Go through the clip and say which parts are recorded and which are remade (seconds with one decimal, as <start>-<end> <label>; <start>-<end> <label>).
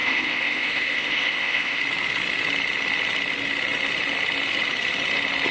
0.0-1.8 remade; 1.8-5.5 recorded